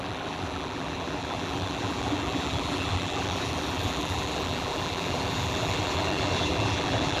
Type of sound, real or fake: fake